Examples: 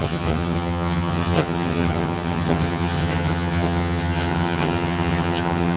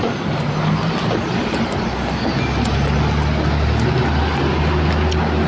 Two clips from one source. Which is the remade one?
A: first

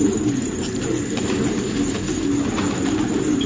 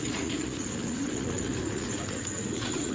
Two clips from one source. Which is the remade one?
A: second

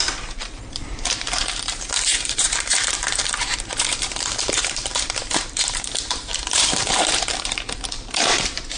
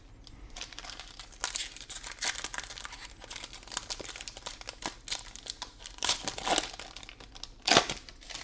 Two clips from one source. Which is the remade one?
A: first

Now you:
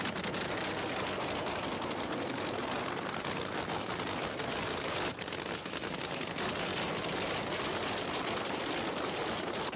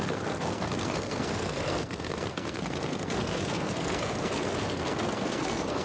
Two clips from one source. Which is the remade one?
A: second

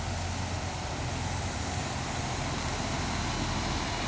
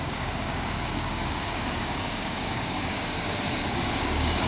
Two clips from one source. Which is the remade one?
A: second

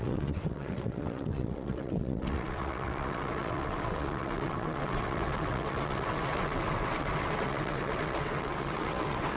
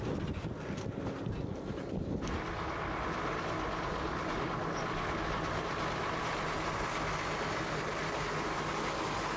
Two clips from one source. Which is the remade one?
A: first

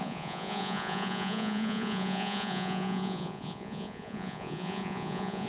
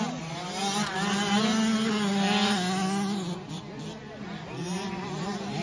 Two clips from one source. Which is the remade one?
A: first